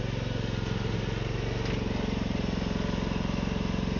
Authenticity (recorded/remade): recorded